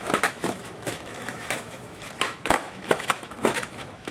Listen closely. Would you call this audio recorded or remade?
remade